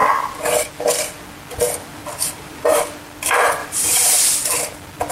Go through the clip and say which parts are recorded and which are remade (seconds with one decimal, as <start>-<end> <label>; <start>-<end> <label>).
0.0-2.0 recorded; 2.0-2.6 remade; 2.6-3.6 recorded; 3.6-4.2 remade; 4.2-5.1 recorded